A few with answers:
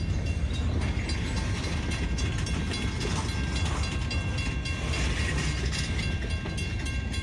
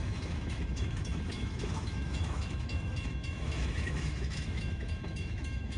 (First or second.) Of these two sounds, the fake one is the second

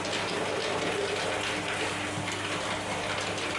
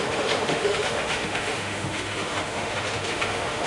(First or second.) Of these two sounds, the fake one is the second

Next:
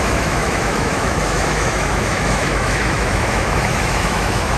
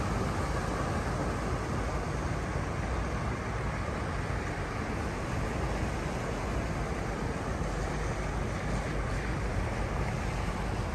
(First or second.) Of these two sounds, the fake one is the first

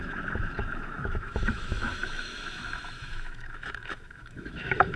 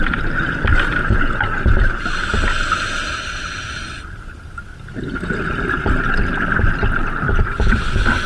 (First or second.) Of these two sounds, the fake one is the first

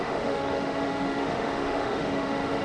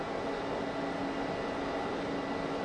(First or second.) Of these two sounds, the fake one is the first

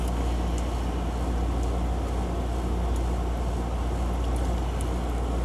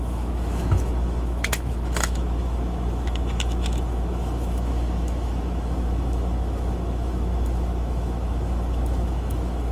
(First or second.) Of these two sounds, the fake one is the second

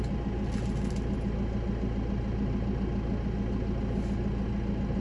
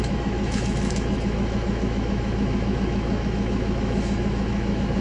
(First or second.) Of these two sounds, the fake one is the second